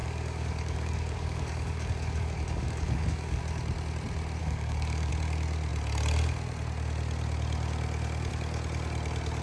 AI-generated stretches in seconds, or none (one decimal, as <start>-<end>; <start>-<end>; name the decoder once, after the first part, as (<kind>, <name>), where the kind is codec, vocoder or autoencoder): 0.0-3.4 (codec, DAC); 4.4-5.1